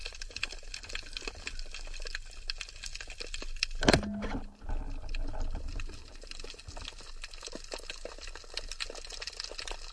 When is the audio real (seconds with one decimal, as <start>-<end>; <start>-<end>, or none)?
0.7-5.7; 6.6-9.9